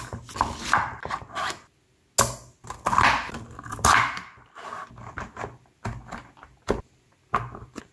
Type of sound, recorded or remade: recorded